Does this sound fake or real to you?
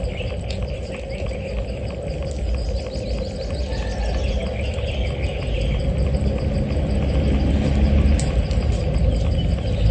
real